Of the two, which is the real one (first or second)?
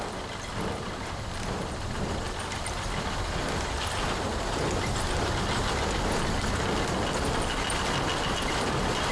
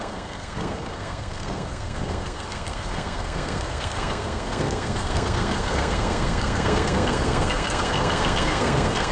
first